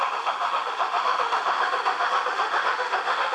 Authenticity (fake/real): fake